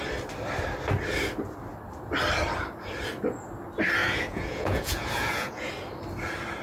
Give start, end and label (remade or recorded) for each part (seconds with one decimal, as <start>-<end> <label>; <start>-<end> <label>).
0.0-4.0 recorded; 4.0-5.7 remade; 5.7-6.6 recorded